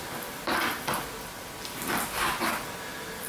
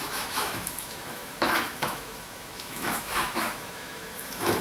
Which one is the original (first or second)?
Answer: first